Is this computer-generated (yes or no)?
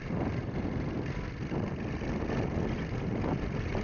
no